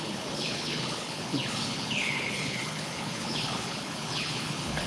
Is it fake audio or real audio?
fake